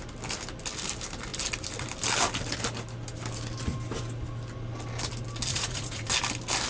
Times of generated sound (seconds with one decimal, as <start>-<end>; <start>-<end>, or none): 5.5-6.1